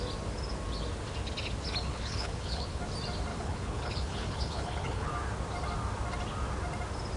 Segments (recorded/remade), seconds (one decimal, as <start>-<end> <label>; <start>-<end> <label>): 0.0-1.9 recorded; 1.9-2.8 remade; 2.8-3.3 recorded; 3.3-5.1 remade; 5.1-7.2 recorded